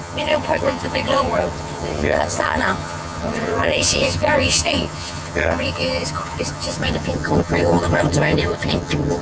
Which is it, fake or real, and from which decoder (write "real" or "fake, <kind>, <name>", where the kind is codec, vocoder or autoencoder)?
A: fake, vocoder, HiFi-GAN